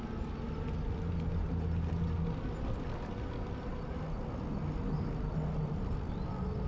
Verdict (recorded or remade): recorded